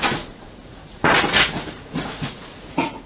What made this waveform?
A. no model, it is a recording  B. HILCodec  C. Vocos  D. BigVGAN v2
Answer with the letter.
C